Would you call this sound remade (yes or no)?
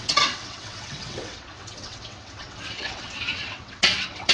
yes